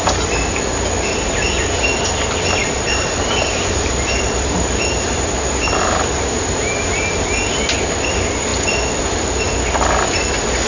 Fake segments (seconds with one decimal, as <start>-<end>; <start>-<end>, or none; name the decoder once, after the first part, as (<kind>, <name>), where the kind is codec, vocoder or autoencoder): 2.6-7.6 (vocoder, BigVGAN v2)